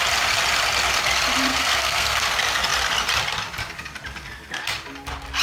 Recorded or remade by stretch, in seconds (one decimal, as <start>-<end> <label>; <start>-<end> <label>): 0.0-1.5 recorded; 1.5-2.2 remade; 2.2-5.4 recorded